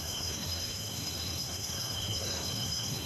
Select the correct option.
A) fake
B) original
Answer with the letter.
A